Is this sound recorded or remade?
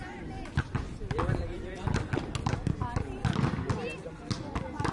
recorded